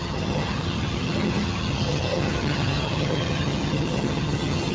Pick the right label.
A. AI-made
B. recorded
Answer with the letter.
A